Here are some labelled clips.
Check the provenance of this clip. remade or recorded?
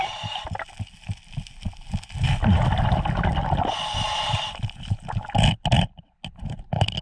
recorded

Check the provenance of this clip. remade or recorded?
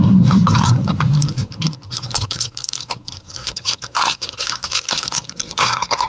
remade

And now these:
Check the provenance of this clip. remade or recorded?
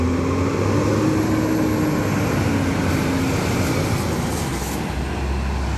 recorded